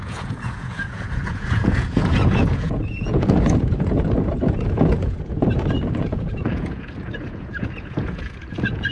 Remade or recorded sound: remade